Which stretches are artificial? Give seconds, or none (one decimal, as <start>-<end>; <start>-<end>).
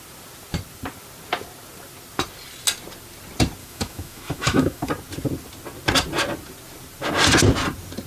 3.6-4.9